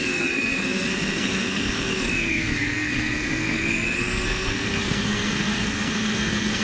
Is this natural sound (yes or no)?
no